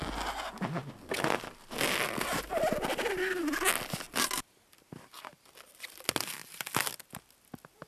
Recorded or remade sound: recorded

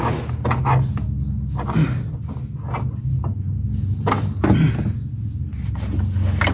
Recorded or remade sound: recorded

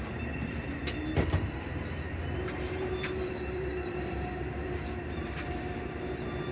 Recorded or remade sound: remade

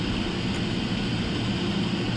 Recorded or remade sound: recorded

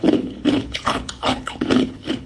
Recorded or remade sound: remade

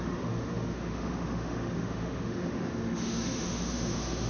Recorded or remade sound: remade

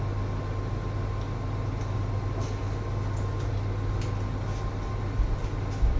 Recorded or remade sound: recorded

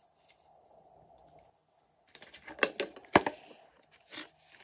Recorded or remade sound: recorded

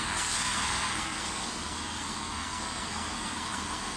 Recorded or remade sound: remade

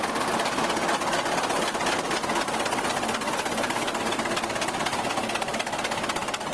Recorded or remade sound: recorded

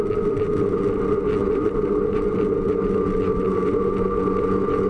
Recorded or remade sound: recorded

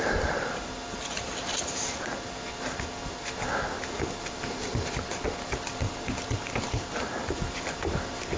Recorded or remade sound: recorded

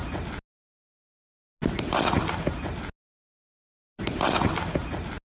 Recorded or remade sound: recorded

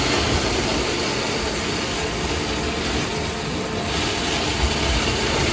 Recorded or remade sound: recorded